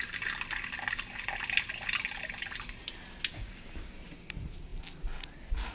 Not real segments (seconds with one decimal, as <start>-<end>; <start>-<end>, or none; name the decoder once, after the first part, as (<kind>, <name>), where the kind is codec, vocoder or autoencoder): 3.3-3.9 (codec, DAC)